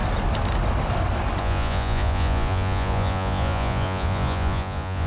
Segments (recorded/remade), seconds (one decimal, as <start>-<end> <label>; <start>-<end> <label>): 0.0-1.4 recorded; 1.4-5.1 remade